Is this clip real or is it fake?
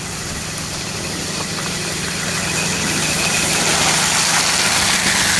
real